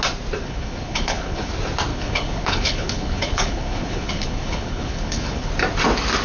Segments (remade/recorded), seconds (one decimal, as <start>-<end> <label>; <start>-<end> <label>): 0.0-0.4 recorded; 0.4-1.5 remade; 1.5-1.9 recorded; 1.9-5.5 remade; 5.5-6.2 recorded